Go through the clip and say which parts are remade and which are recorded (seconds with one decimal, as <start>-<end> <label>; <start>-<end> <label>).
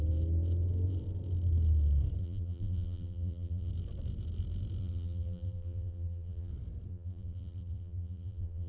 0.0-2.2 recorded; 2.2-3.7 remade; 3.7-4.8 recorded; 4.8-6.5 remade; 6.5-6.9 recorded; 6.9-8.7 remade